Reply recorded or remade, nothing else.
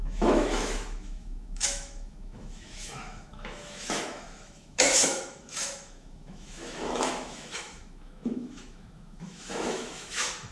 remade